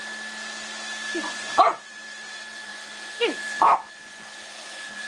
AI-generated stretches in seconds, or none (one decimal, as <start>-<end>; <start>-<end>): 1.2-5.1